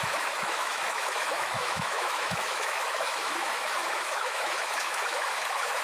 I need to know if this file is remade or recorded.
remade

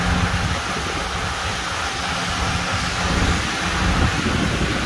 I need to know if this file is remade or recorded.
recorded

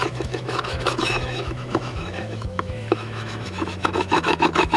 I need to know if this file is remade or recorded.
remade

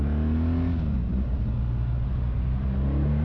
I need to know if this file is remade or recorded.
recorded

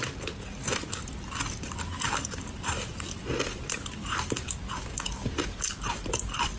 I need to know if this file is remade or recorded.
recorded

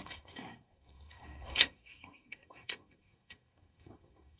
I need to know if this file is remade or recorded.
remade